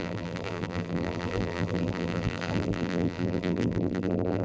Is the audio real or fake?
fake